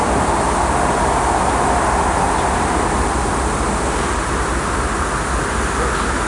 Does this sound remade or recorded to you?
recorded